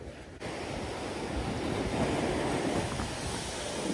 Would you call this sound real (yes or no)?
yes